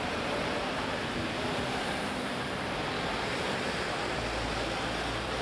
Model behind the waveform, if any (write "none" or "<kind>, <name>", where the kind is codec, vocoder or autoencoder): vocoder, BigVGAN v2